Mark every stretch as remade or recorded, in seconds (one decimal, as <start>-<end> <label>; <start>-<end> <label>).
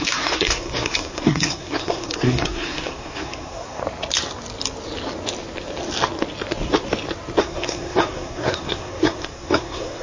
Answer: 0.0-3.8 remade; 3.8-7.4 recorded; 7.4-10.0 remade